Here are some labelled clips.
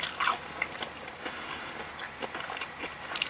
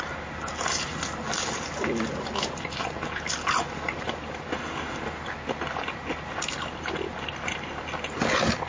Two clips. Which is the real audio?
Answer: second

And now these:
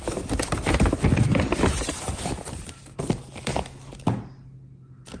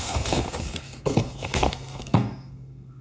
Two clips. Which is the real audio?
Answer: first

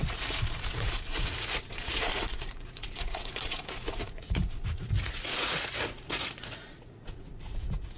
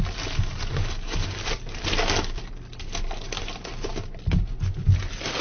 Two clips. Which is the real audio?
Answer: second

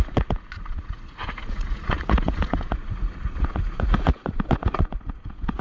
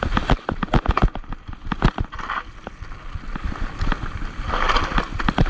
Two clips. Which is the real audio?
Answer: second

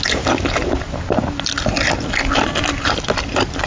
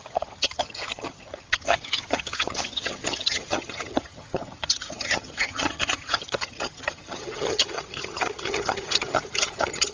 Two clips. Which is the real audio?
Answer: first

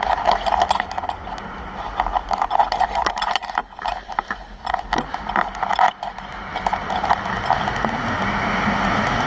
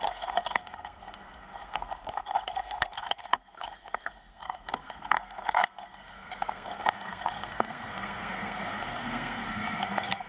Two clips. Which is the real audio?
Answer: first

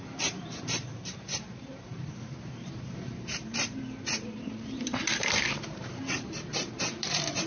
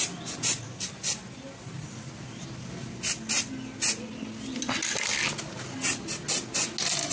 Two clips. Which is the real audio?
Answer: second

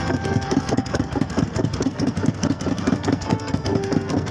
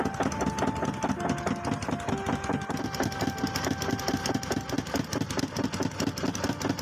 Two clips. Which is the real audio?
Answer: second